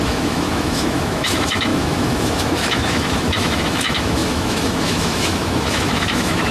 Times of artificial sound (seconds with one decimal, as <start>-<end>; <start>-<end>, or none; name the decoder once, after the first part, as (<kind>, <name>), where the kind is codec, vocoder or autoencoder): 0.0-6.5 (autoencoder, DAC-VAE)